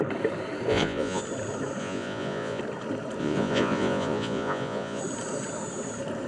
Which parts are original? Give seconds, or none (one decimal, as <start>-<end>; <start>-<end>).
0.0-0.7; 1.2-1.8; 2.6-3.2; 5.0-6.3